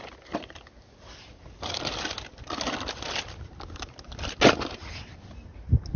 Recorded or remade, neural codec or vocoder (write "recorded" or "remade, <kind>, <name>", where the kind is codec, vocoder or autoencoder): recorded